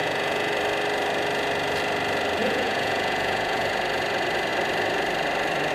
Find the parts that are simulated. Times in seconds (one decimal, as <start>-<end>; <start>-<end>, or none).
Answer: 0.0-0.5; 2.4-3.7